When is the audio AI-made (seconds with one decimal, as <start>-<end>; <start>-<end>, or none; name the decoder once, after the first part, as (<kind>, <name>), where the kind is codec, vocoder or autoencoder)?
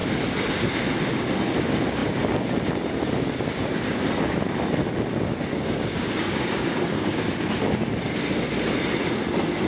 5.5-7.2 (codec, DAC)